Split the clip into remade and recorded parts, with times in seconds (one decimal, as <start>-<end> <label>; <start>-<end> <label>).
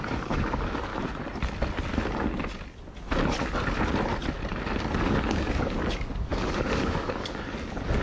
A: 0.0-0.9 remade; 0.9-5.0 recorded; 5.0-8.0 remade